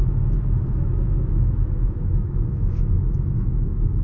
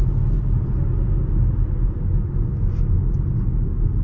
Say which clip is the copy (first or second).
first